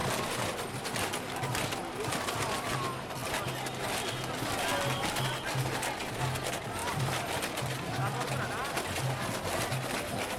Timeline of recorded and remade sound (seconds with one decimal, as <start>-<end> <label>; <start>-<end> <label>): 0.0-6.8 recorded; 6.8-8.3 remade; 8.3-10.4 recorded